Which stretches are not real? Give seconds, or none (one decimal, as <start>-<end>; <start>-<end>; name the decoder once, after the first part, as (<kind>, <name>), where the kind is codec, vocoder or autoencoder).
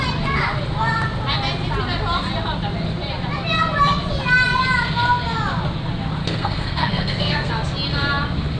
6.2-7.5 (codec, SNAC)